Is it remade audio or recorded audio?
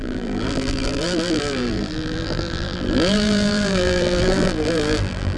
remade